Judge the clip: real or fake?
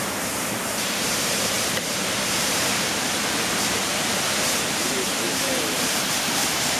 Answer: fake